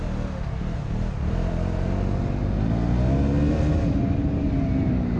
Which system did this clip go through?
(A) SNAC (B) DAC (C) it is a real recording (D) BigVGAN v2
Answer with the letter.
C